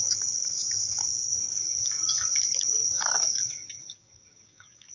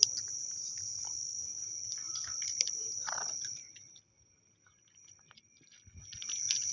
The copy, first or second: first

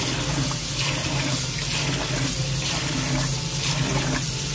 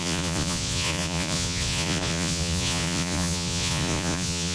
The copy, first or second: second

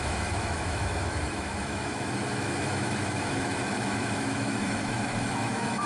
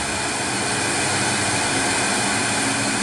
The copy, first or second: first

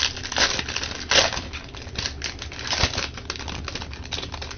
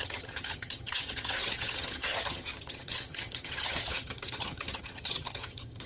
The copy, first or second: second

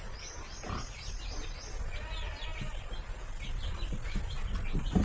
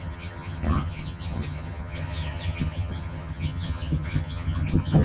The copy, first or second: second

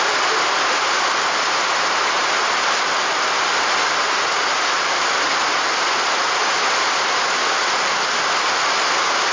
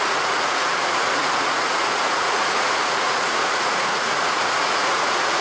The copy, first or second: second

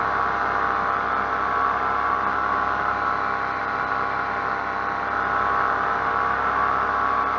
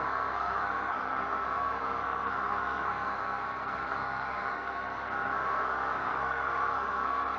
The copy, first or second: second